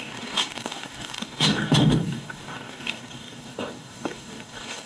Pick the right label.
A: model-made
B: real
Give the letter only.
A